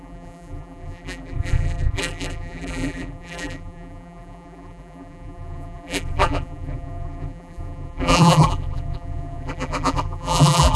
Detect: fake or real fake